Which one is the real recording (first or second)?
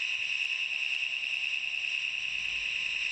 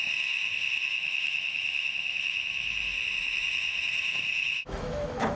first